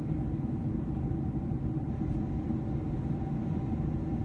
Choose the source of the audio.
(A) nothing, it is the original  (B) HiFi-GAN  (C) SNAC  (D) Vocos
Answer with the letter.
A